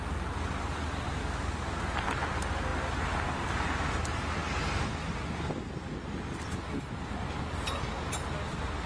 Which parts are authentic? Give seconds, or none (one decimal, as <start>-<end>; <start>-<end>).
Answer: 0.0-1.2; 1.8-8.9